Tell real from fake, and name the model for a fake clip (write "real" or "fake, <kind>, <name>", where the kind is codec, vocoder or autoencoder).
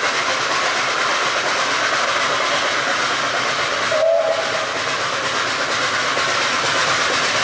real